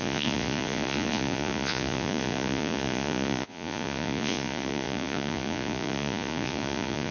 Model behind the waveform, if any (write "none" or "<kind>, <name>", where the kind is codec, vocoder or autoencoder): vocoder, Vocos